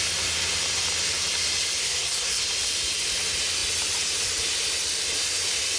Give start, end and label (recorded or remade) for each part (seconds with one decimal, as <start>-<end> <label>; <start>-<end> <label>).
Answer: 0.0-1.8 recorded; 1.8-2.4 remade; 2.4-5.8 recorded